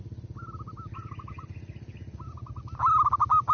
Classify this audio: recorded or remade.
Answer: recorded